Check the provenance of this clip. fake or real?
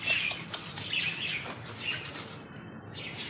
fake